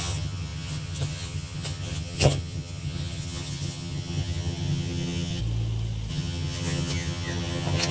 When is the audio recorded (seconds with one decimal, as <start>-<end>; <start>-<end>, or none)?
5.4-6.1